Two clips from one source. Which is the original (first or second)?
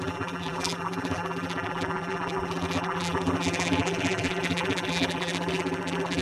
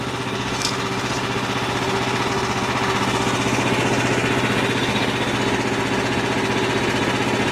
second